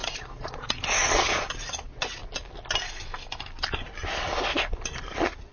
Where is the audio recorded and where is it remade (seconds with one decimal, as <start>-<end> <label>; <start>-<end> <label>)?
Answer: 0.0-2.2 remade; 2.2-5.1 recorded; 5.1-5.5 remade